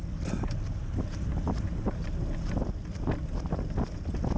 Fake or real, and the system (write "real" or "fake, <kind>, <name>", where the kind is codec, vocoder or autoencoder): real